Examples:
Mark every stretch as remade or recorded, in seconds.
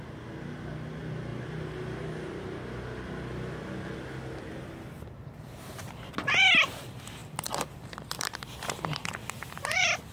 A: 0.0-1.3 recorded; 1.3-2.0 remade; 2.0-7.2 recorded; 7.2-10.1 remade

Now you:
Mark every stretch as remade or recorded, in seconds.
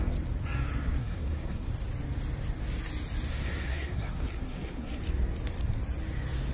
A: 0.0-1.0 recorded; 1.0-1.7 remade; 1.7-3.3 recorded; 3.3-5.0 remade; 5.0-6.5 recorded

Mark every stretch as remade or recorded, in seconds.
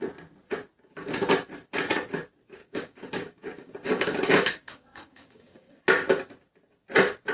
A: 0.0-2.6 recorded; 2.6-5.8 remade; 5.8-7.3 recorded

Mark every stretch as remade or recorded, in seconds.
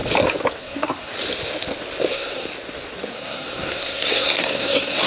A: 0.0-0.6 recorded; 0.6-1.1 remade; 1.1-2.1 recorded; 2.1-2.5 remade; 2.5-3.1 recorded; 3.1-5.1 remade